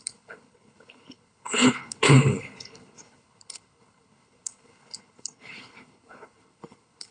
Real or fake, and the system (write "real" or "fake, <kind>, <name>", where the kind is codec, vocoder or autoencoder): fake, codec, HILCodec